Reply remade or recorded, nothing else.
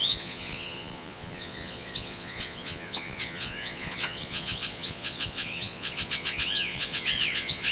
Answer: remade